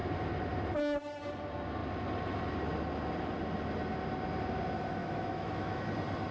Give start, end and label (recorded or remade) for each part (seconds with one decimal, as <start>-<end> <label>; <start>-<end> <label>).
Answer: 0.0-5.0 recorded; 5.0-5.8 remade; 5.8-6.3 recorded